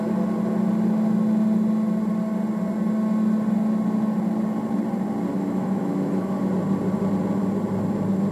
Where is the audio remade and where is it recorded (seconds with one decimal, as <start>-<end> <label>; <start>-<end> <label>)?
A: 0.0-5.3 recorded; 5.3-6.5 remade; 6.5-8.3 recorded